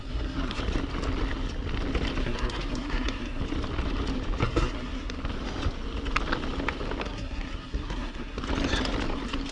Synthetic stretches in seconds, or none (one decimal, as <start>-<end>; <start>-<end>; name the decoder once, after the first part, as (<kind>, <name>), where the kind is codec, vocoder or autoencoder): 0.0-0.6 (codec, SNAC); 2.2-3.4; 4.4-5.2; 7.0-8.4